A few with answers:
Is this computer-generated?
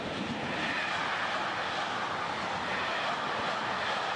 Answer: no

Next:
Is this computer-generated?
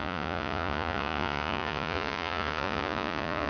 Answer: yes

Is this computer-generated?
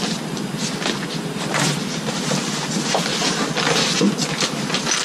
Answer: no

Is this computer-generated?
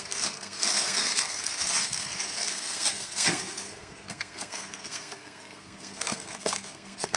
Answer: yes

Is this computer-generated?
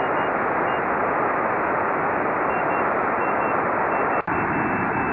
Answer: no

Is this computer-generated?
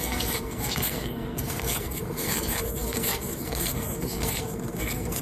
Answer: yes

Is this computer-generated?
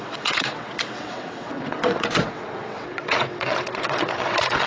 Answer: yes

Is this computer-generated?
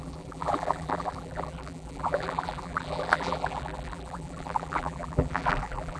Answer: yes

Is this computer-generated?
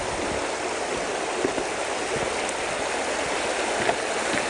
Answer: no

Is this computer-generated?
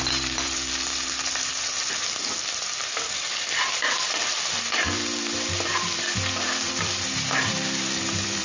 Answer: yes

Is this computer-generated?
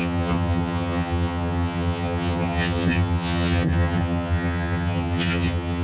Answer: yes